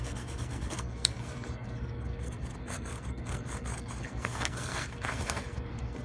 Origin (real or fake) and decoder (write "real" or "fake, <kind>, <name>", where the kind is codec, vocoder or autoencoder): fake, codec, SNAC